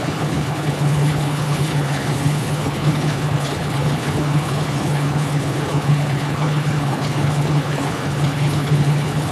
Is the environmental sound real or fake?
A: fake